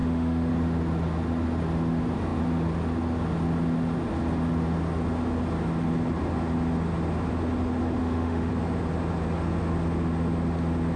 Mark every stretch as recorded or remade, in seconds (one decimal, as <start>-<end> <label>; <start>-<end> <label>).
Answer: 0.0-0.5 remade; 0.5-8.0 recorded; 8.0-8.5 remade; 8.5-11.0 recorded